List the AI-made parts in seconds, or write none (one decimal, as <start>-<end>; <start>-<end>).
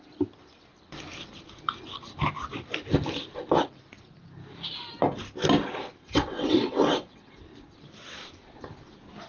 6.0-7.4